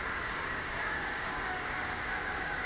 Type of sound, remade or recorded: remade